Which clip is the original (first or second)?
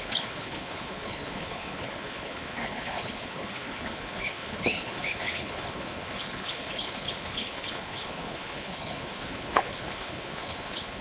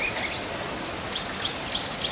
second